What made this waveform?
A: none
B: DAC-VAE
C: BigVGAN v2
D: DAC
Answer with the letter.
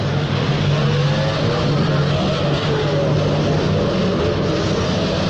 A